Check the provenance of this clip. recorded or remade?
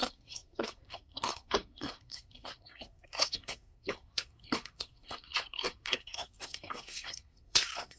remade